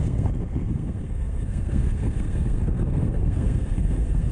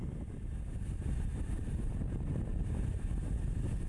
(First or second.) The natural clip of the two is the second